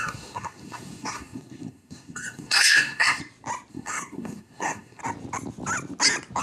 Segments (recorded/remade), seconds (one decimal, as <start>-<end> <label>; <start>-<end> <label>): 0.0-3.2 remade; 3.2-3.7 recorded; 3.7-5.0 remade; 5.0-6.4 recorded